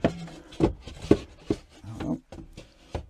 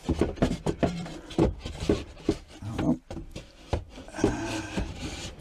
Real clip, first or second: first